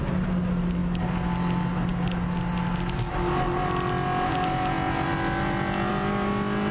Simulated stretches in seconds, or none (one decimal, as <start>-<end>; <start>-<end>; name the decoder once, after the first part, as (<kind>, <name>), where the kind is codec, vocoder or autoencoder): none